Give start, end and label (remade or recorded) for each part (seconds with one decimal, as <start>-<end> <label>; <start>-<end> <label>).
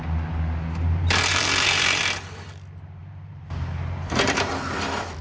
0.0-1.3 recorded; 1.3-2.0 remade; 2.0-3.0 recorded; 3.0-4.5 remade; 4.5-5.2 recorded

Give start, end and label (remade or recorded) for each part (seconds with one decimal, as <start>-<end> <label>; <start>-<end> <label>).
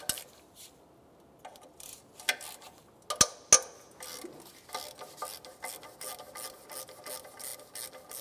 0.0-8.2 recorded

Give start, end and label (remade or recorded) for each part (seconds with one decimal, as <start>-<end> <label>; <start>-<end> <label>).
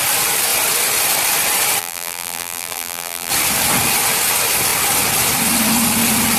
0.0-1.8 recorded; 1.8-3.3 remade; 3.3-6.4 recorded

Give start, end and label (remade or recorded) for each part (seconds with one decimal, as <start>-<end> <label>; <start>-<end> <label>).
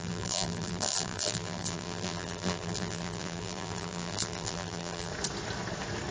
0.0-5.1 remade; 5.1-6.1 recorded